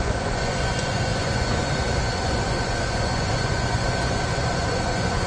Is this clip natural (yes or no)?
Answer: no